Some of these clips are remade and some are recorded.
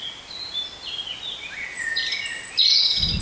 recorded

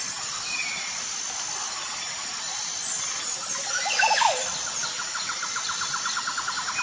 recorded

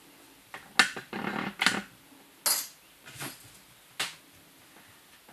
recorded